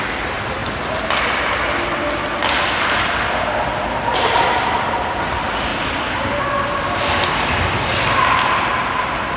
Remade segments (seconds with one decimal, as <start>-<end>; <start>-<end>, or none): 5.7-6.4